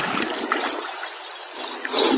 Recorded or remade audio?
recorded